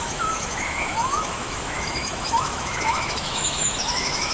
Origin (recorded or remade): remade